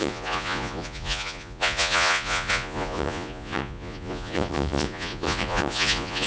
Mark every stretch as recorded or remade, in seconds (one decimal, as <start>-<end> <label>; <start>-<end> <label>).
0.0-6.3 remade